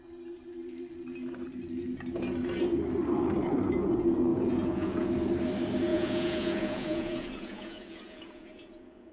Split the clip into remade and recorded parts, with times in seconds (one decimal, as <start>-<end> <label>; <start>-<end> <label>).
0.0-4.3 recorded; 4.3-5.1 remade; 5.1-5.9 recorded; 5.9-9.1 remade